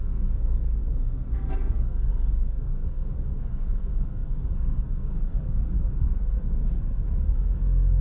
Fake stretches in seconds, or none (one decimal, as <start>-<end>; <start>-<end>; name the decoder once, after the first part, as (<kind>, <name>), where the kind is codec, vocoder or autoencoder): 0.0-8.0 (codec, SNAC)